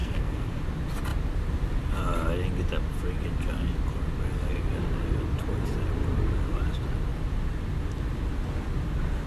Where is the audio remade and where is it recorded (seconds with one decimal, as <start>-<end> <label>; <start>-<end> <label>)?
0.0-0.6 remade; 0.6-9.3 recorded